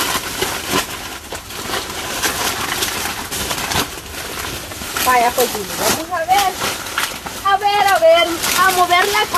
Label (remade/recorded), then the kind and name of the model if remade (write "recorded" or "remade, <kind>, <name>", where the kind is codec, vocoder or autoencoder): remade, vocoder, BigVGAN v2